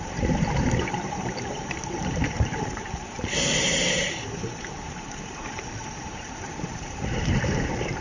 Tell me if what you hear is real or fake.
fake